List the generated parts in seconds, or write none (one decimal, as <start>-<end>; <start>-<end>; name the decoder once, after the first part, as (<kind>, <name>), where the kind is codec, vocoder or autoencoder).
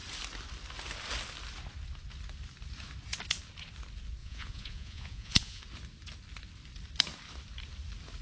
4.2-5.6 (vocoder, Vocos)